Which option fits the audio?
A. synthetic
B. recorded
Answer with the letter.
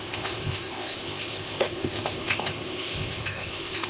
A